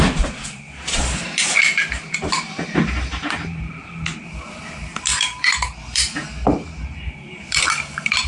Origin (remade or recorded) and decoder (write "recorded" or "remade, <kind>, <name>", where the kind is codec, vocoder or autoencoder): remade, vocoder, BigVGAN v2